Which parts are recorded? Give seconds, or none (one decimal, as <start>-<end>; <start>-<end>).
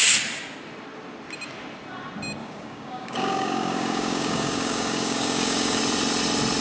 0.0-2.4; 5.8-6.6